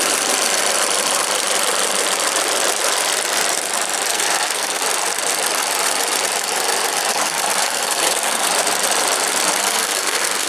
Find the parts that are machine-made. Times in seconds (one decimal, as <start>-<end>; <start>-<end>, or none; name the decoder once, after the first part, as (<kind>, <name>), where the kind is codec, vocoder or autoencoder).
4.1-4.8 (codec, SNAC); 7.1-8.5; 9.6-10.5